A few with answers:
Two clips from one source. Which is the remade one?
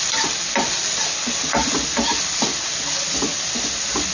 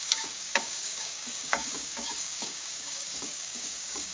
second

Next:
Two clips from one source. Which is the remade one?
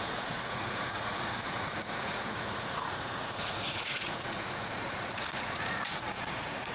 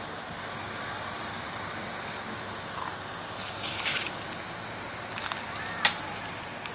first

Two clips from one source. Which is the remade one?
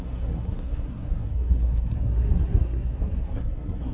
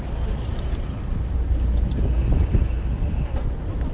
first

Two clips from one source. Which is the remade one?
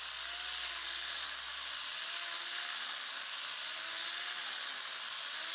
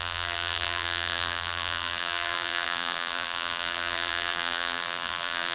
second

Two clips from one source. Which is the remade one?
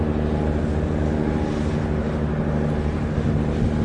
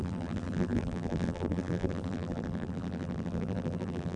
second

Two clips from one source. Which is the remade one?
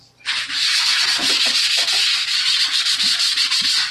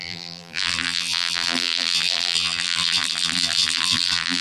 second